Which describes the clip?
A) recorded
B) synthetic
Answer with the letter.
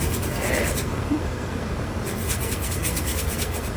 B